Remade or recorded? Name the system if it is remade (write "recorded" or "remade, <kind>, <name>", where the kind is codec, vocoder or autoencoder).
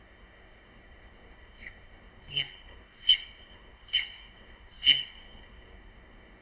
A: remade, codec, SNAC